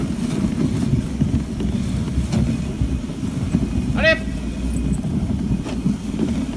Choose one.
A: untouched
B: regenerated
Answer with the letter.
A